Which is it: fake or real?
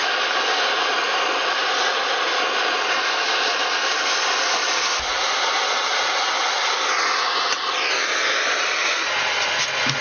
real